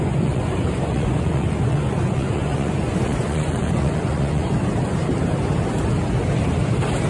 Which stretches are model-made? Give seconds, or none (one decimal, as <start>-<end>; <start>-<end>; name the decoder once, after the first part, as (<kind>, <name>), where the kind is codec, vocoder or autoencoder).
0.0-4.5 (vocoder, Vocos)